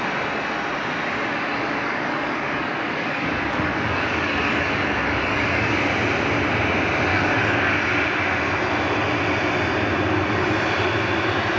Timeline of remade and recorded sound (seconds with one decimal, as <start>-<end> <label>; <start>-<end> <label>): 0.0-1.3 recorded; 1.3-5.8 remade; 5.8-7.1 recorded; 7.1-7.7 remade; 7.7-11.6 recorded